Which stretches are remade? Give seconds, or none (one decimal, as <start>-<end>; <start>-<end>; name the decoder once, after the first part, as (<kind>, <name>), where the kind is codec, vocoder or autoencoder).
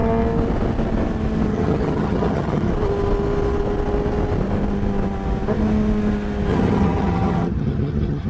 1.5-2.7 (vocoder, HiFi-GAN); 6.5-8.3